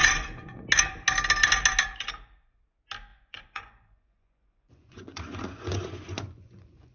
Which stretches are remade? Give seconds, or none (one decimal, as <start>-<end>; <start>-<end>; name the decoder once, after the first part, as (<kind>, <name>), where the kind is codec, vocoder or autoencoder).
0.0-0.6 (vocoder, Vocos); 3.1-6.9